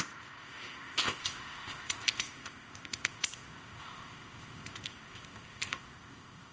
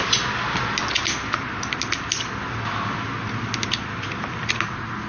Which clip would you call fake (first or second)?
first